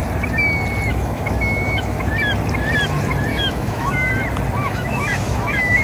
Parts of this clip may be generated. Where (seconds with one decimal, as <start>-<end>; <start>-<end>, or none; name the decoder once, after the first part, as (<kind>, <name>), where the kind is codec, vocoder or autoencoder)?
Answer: 0.9-2.1 (autoencoder, DAC-VAE); 3.3-4.1; 4.6-5.8